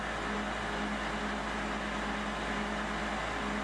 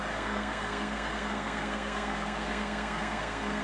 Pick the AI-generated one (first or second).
second